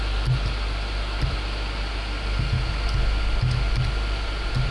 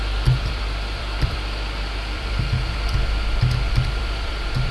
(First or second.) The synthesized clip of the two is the second